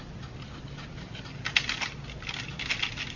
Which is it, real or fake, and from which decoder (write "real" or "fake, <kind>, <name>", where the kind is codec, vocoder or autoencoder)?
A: real